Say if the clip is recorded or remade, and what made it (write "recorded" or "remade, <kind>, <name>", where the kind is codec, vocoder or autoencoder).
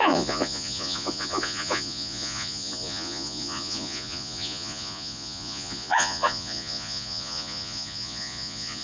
remade, vocoder, Vocos